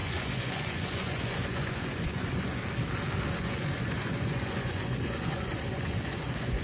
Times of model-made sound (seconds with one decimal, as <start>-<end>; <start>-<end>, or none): 0.0-2.6; 3.3-6.6